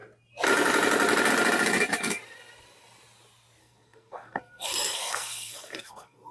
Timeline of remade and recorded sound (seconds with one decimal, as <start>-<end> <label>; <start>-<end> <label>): 0.0-3.6 recorded; 3.6-6.3 remade